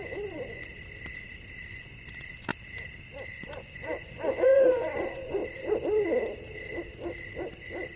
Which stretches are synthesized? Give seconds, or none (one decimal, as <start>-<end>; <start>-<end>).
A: 0.0-0.7; 1.7-2.5; 3.3-5.4